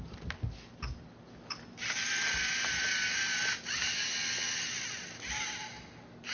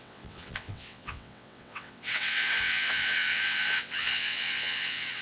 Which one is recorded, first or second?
first